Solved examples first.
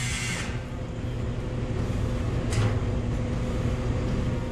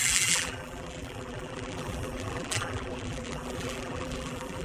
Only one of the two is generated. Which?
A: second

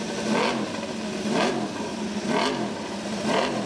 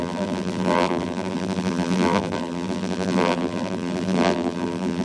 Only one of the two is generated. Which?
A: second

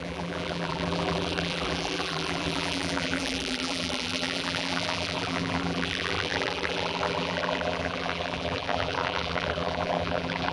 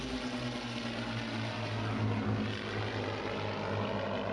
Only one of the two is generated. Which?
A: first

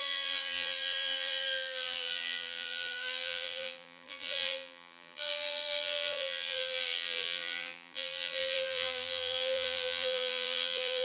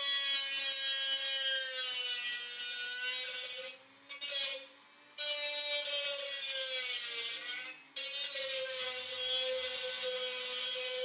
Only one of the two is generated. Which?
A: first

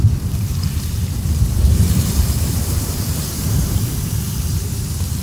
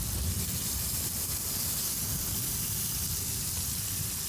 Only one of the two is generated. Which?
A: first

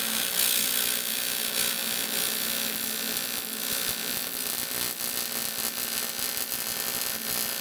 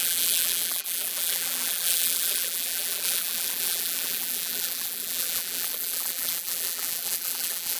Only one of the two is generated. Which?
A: second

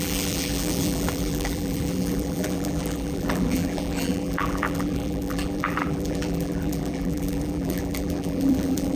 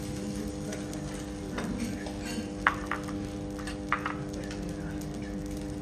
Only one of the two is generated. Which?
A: first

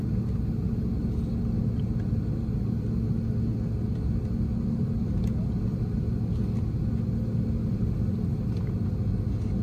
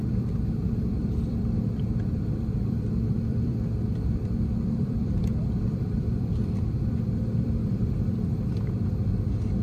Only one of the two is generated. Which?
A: second